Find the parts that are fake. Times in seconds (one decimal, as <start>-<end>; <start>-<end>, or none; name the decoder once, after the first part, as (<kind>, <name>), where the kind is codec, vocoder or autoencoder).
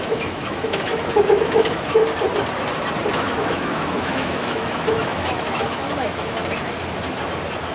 0.0-2.0 (autoencoder, DAC-VAE); 3.1-6.4